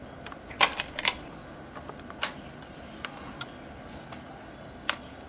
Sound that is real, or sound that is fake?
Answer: real